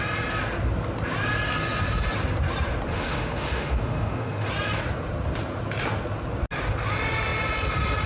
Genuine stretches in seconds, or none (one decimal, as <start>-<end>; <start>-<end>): 0.0-2.9; 4.5-8.1